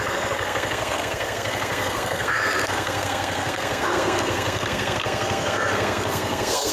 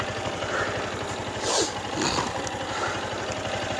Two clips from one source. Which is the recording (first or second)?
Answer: second